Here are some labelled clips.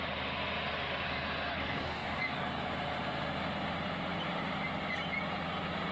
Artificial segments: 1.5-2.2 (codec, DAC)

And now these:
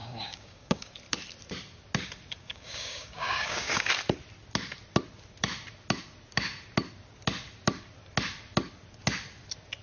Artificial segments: 0.0-0.9 (codec, DAC); 2.4-3.9

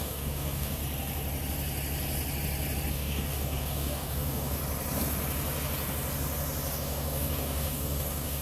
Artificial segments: 0.0-0.8 (codec, DAC); 2.9-4.6; 6.7-8.4

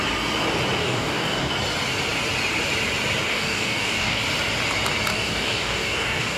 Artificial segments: 0.8-1.5 (codec, DAC); 3.3-4.2; 5.1-6.4

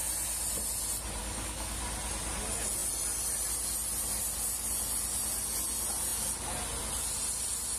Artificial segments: 1.2-1.8 (codec, DAC)

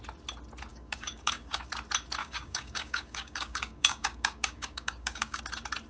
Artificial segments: 0.7-1.7 (codec, DAC); 2.2-5.4